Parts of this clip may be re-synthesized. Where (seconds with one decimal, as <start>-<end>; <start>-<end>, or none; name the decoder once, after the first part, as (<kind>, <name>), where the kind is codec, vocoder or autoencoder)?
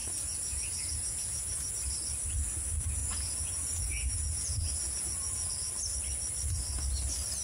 0.0-1.7 (vocoder, Vocos); 3.0-5.5